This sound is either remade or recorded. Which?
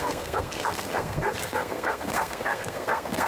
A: remade